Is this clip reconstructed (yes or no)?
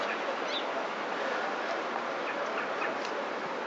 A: no